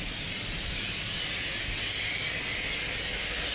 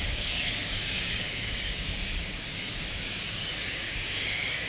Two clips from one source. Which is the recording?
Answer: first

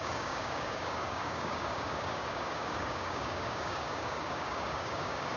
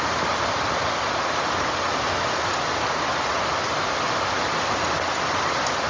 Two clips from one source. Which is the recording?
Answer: second